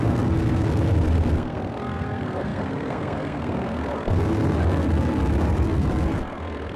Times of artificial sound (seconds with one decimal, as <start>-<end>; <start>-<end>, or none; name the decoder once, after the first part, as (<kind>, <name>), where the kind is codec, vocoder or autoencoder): 0.0-6.8 (codec, SNAC)